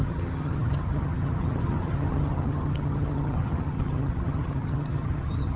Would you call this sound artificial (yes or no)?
yes